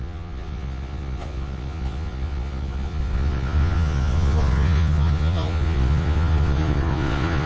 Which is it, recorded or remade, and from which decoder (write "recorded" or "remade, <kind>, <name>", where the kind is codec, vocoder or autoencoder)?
remade, vocoder, Vocos